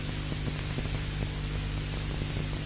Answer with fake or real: real